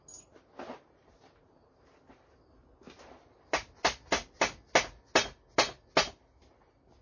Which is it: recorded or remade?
recorded